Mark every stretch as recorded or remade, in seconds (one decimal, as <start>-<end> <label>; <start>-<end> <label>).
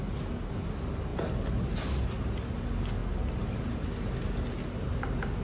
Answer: 0.0-5.4 recorded